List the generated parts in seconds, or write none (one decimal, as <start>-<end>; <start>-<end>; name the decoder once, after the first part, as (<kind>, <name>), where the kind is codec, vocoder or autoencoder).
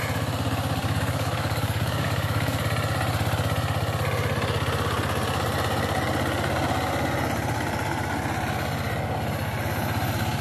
0.8-2.6 (codec, DAC)